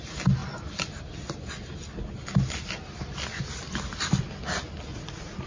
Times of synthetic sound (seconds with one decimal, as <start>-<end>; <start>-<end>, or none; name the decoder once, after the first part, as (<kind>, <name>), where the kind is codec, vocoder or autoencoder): 4.9-5.5 (vocoder, Vocos)